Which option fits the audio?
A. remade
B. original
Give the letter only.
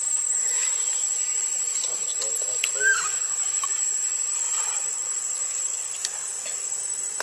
B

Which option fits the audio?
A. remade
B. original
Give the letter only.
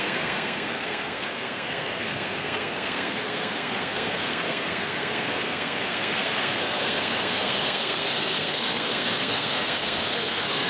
A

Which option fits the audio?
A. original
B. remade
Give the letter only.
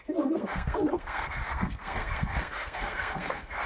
B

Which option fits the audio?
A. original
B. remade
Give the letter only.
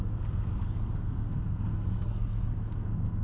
B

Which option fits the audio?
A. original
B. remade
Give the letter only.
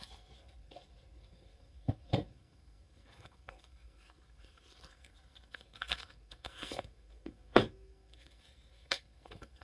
B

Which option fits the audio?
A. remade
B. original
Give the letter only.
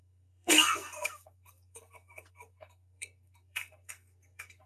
A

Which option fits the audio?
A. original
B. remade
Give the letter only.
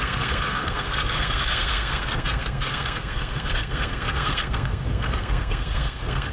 B